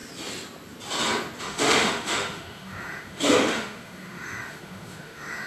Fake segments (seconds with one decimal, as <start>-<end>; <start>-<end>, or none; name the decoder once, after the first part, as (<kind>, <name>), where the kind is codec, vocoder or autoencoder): 1.4-5.5 (autoencoder, DAC-VAE)